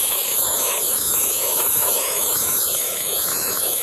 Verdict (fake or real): fake